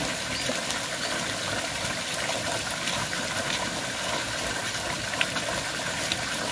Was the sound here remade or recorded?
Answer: recorded